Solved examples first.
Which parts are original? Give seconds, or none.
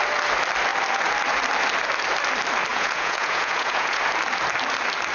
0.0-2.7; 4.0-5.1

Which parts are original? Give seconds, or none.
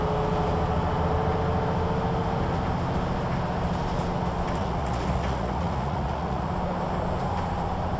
0.0-4.6; 6.5-8.0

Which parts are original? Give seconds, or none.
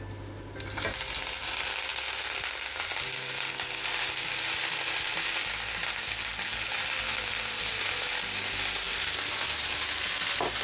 0.0-10.6